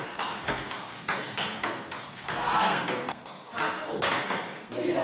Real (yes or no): no